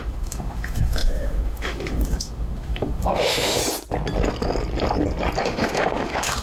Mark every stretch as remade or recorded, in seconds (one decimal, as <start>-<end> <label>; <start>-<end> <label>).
0.0-3.6 remade; 3.6-5.4 recorded; 5.4-6.4 remade